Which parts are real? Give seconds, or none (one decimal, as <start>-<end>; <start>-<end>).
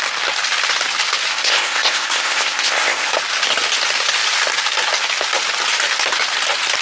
0.0-1.3; 3.1-6.8